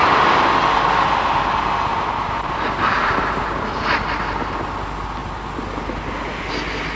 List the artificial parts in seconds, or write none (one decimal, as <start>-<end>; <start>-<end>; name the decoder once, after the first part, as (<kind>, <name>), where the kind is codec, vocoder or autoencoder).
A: 1.9-3.8 (vocoder, BigVGAN v2)